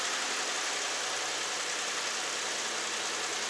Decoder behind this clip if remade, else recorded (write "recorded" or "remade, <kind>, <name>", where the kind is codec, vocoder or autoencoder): recorded